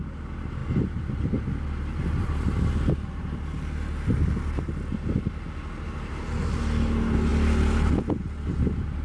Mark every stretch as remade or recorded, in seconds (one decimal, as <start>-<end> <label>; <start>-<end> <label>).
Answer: 0.0-9.0 recorded